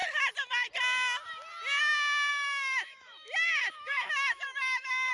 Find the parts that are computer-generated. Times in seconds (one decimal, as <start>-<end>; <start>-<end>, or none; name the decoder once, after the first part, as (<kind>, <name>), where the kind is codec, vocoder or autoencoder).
2.3-5.1 (autoencoder, DAC-VAE)